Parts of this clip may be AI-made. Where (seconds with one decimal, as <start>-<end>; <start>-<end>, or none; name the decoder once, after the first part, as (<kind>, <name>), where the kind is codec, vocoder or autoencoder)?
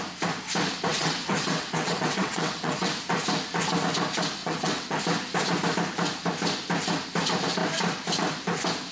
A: 0.9-2.9 (vocoder, WaveNeXt); 4.4-5.0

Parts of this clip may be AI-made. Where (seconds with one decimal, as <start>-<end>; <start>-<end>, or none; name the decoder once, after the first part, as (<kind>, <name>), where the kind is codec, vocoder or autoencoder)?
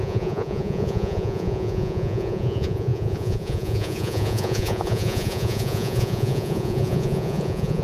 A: 0.0-7.8 (vocoder, Vocos)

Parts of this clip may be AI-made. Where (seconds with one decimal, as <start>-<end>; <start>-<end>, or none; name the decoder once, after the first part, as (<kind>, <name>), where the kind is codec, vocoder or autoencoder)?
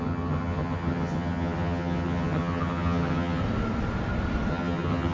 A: 0.0-3.4 (vocoder, HiFi-GAN); 4.5-5.1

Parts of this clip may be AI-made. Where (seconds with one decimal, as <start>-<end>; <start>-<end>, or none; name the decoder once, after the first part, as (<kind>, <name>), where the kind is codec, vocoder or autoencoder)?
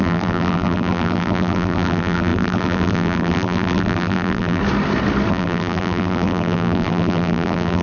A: 0.0-4.6 (vocoder, BigVGAN v2); 5.3-7.8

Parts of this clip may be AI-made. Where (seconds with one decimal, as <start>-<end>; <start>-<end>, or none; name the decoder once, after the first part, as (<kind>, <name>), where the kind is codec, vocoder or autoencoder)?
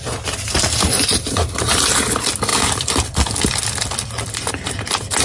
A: none